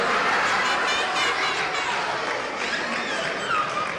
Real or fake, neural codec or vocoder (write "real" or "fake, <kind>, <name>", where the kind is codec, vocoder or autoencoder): real